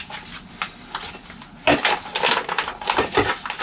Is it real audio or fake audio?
real